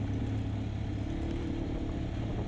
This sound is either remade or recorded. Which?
recorded